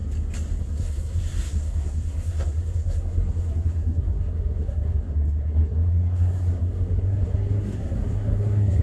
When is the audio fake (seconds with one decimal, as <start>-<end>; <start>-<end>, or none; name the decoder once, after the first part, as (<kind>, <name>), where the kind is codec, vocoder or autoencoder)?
0.6-8.8 (codec, SNAC)